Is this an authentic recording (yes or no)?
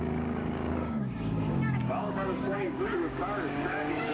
no